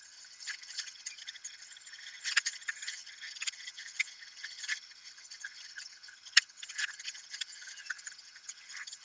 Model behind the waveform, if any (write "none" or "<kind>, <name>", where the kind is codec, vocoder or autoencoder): vocoder, HiFi-GAN